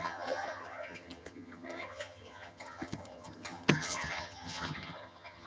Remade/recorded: remade